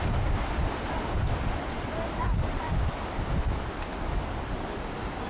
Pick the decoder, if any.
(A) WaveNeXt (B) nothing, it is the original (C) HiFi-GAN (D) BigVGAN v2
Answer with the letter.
B